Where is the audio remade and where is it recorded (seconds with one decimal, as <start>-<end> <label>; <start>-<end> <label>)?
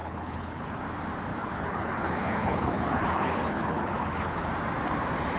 0.0-0.8 remade; 0.8-1.3 recorded; 1.3-4.5 remade; 4.5-5.4 recorded